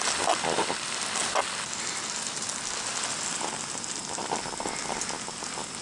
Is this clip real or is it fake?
real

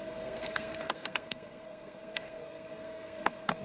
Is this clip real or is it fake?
fake